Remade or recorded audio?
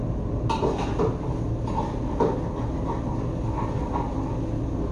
recorded